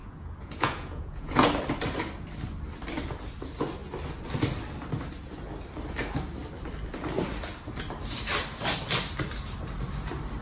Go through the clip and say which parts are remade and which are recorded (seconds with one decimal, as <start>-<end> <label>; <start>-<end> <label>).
0.0-1.5 remade; 1.5-10.4 recorded